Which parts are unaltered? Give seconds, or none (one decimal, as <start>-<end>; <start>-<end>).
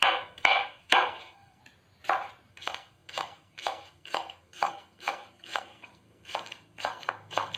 1.6-2.5